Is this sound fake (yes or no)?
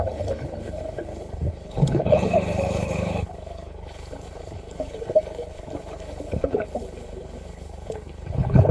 yes